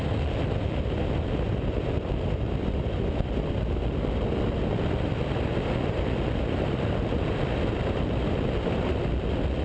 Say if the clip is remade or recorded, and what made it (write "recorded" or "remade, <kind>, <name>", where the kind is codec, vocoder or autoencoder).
recorded